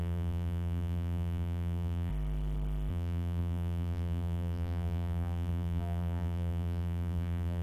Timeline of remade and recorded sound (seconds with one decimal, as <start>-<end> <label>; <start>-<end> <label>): 0.0-2.1 remade; 2.1-2.9 recorded; 2.9-7.6 remade